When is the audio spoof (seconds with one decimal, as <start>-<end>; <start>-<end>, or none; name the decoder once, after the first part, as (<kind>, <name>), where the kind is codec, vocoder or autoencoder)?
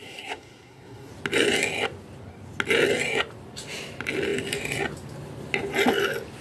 0.0-1.1 (codec, SNAC)